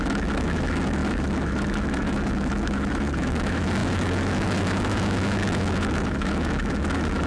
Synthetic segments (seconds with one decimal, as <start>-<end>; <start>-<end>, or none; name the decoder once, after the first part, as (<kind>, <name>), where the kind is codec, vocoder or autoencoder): 0.0-7.3 (autoencoder, DAC-VAE)